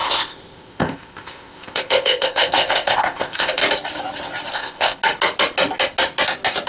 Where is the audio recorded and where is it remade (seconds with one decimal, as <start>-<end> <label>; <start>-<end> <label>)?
0.0-3.6 remade; 3.6-4.5 recorded; 4.5-5.0 remade; 5.0-6.7 recorded

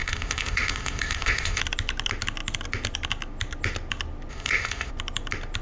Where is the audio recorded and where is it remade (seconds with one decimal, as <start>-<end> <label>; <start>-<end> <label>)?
0.0-1.6 remade; 1.6-4.3 recorded; 4.3-4.9 remade; 4.9-5.6 recorded

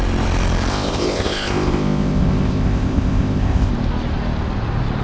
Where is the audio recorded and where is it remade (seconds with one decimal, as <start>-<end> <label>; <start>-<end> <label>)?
0.0-0.7 recorded; 0.7-3.7 remade; 3.7-5.0 recorded

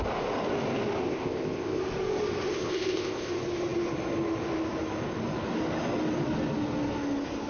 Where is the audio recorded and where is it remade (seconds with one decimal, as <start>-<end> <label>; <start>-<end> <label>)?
0.0-1.0 recorded; 1.0-1.8 remade; 1.8-2.5 recorded; 2.5-3.3 remade; 3.3-7.5 recorded

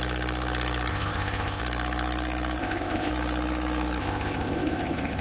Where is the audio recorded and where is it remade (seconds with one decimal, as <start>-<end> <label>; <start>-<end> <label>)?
0.0-0.9 recorded; 0.9-1.6 remade; 1.6-2.6 recorded; 2.6-3.1 remade; 3.1-4.0 recorded; 4.0-5.2 remade

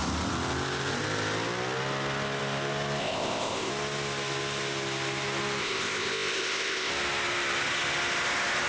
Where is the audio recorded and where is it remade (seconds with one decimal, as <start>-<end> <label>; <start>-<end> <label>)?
0.0-3.0 recorded; 3.0-3.7 remade; 3.7-5.6 recorded; 5.6-6.9 remade; 6.9-8.7 recorded